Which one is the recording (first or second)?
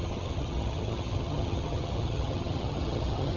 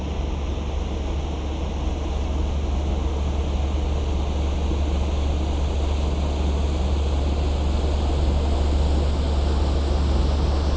second